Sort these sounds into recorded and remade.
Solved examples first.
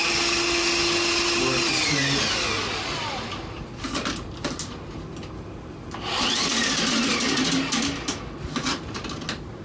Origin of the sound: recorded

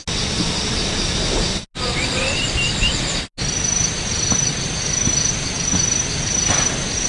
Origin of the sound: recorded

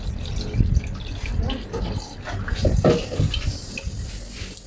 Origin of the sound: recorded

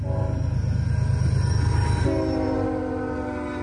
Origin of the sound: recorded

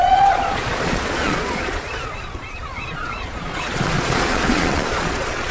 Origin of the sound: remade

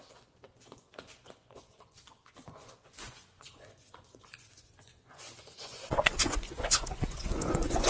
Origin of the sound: remade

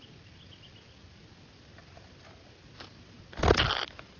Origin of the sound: recorded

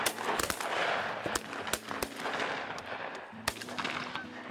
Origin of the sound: recorded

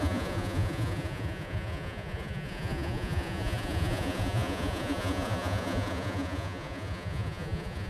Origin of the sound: remade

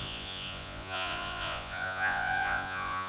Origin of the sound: remade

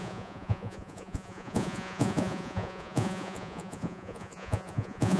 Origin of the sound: remade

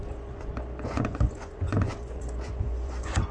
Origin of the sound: remade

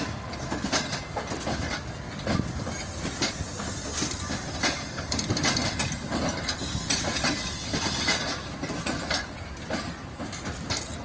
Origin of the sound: recorded